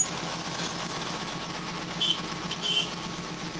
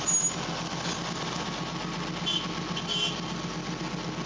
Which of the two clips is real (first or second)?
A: second